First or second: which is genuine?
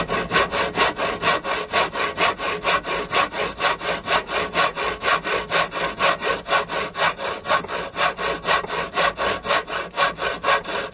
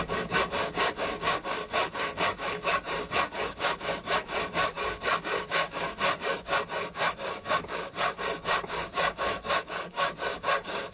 first